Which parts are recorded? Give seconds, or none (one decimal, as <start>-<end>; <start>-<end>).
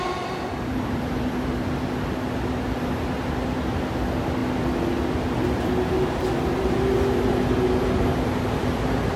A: 0.0-9.2